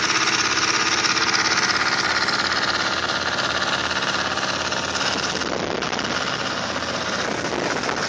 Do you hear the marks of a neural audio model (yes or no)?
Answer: no